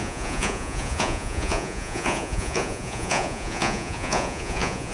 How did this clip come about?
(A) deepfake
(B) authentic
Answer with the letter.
A